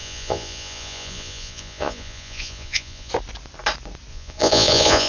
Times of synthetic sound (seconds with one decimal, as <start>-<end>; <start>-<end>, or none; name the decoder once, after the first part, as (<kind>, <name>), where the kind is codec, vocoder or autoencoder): 0.0-3.1 (vocoder, Vocos); 4.1-5.1